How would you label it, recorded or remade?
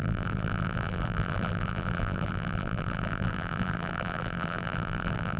remade